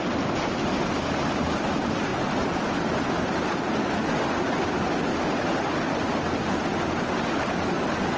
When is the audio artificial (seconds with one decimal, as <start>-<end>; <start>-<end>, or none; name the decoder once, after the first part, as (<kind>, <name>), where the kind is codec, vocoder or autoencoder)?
none